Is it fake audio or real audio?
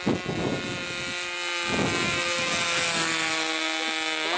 real